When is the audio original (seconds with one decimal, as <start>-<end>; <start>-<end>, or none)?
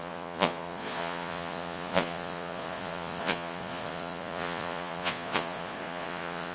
none